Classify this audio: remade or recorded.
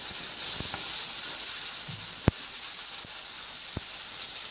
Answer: recorded